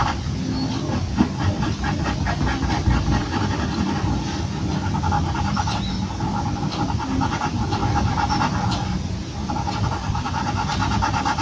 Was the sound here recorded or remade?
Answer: recorded